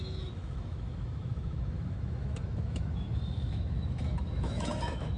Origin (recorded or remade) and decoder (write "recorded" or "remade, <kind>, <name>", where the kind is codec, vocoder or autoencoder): remade, autoencoder, DAC-VAE